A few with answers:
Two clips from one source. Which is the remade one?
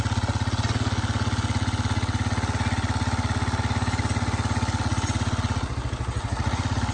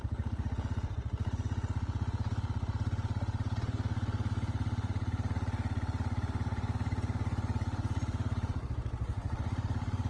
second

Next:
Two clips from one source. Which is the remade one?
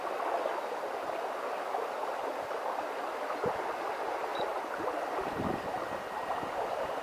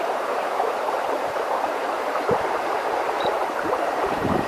second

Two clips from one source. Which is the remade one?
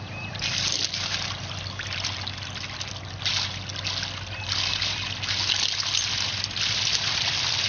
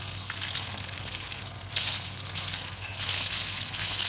second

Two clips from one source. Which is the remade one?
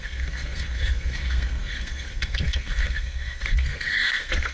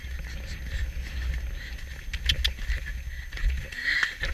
first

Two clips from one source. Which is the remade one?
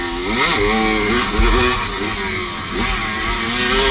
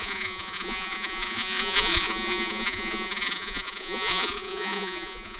second